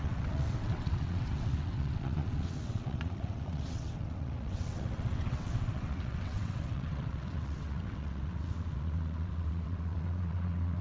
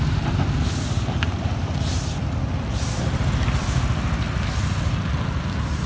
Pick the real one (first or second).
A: second